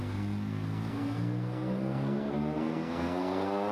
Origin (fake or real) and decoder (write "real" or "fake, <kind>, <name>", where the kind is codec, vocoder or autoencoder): fake, codec, SNAC